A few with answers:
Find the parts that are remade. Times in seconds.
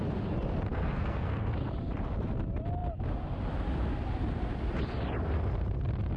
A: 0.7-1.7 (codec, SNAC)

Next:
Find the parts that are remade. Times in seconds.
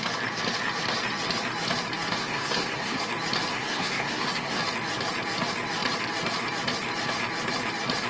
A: 2.2-3.0 (codec, SNAC); 3.5-4.6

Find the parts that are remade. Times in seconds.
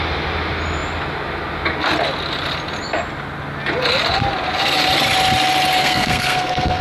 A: 5.8-6.8 (codec, SNAC)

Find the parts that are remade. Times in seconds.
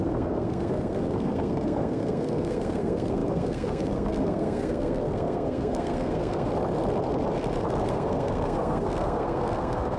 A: 0.0-6.5 (codec, SNAC); 7.9-10.0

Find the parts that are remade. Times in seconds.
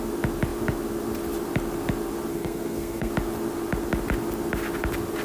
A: 2.3-3.1 (codec, SNAC)